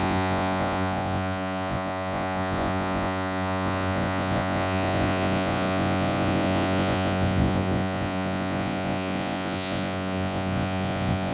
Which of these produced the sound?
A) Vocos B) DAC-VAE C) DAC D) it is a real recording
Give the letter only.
A